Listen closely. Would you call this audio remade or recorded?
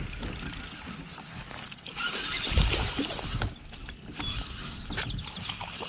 recorded